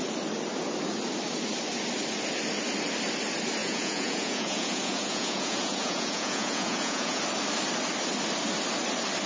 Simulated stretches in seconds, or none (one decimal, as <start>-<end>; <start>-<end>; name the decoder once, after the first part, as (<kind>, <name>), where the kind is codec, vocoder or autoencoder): 3.6-7.2 (vocoder, Vocos)